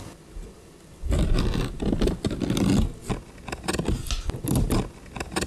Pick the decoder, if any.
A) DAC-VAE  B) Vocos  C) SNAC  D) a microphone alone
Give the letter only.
D